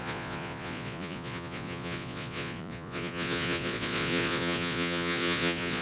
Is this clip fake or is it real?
fake